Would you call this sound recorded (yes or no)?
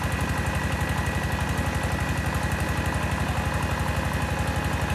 yes